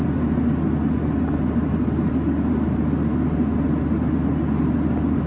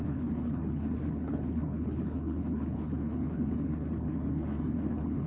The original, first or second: first